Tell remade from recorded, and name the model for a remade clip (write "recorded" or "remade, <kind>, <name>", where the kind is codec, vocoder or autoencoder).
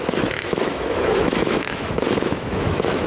remade, autoencoder, DAC-VAE